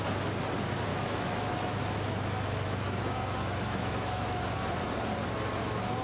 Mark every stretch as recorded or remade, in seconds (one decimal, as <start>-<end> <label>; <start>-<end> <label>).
0.0-0.9 recorded; 0.9-4.4 remade; 4.4-6.0 recorded